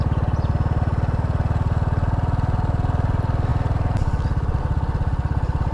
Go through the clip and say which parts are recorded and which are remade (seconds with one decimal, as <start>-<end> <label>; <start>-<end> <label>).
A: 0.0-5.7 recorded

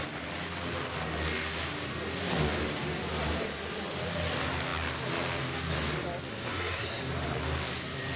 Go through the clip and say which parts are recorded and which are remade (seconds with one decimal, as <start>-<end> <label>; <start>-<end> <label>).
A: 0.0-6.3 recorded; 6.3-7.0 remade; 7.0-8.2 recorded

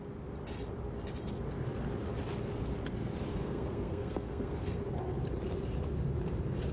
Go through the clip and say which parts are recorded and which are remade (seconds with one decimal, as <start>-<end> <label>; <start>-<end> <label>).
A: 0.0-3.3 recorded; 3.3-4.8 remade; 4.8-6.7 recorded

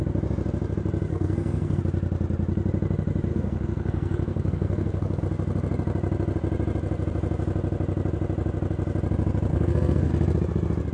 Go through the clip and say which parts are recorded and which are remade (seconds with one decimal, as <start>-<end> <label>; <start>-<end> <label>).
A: 0.0-1.1 recorded; 1.1-1.8 remade; 1.8-3.3 recorded; 3.3-5.2 remade; 5.2-9.5 recorded; 9.5-10.1 remade; 10.1-10.9 recorded